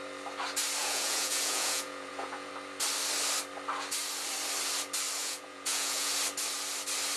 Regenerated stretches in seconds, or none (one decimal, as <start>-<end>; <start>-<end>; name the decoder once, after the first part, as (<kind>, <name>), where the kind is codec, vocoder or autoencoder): 0.8-2.5 (vocoder, Vocos); 5.2-6.1